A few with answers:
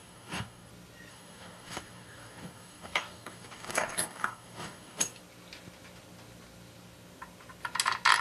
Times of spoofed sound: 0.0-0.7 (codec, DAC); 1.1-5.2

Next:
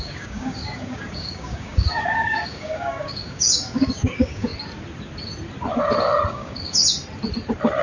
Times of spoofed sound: 0.0-4.5 (codec, DAC); 6.3-6.8